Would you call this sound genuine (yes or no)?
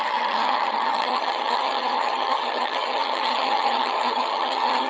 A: no